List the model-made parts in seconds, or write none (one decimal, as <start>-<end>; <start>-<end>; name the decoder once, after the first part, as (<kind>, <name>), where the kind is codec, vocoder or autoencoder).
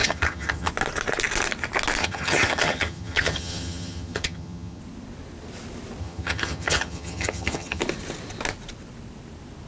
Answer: 0.0-0.7 (vocoder, HiFi-GAN); 2.0-4.8; 6.0-7.8